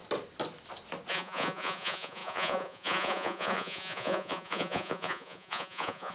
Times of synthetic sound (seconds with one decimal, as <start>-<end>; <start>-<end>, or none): 1.1-6.1